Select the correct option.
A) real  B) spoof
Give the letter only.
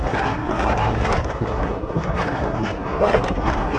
B